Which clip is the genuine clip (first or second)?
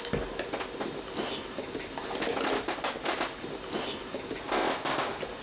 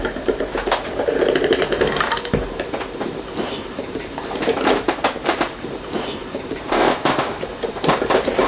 first